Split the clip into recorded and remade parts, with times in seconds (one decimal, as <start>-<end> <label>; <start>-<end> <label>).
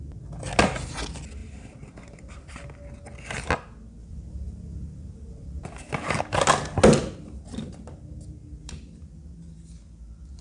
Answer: 0.0-1.4 recorded; 1.4-2.5 remade; 2.5-4.0 recorded; 4.0-6.1 remade; 6.1-7.0 recorded; 7.0-9.2 remade; 9.2-10.4 recorded